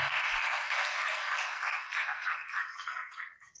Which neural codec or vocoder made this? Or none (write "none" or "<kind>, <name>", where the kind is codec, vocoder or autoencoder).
codec, SNAC